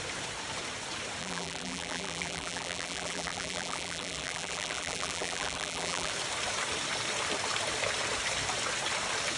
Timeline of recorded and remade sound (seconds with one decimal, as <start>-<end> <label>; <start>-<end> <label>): 0.0-1.2 recorded; 1.2-6.1 remade; 6.1-9.4 recorded